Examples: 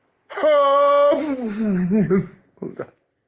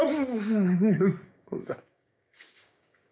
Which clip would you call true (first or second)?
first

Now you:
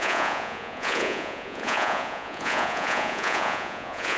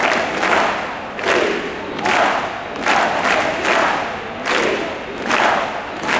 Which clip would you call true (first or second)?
second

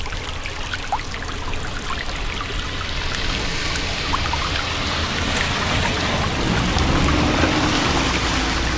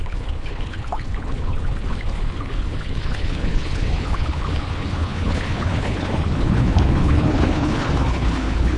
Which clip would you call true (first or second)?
first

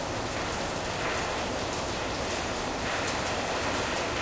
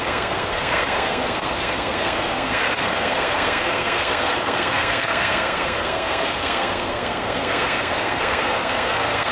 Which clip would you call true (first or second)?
first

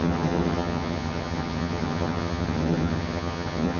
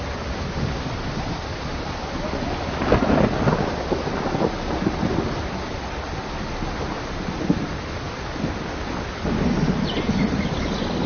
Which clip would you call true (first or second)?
second